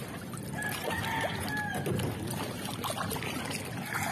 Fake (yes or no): no